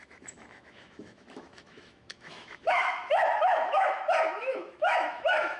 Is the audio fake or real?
fake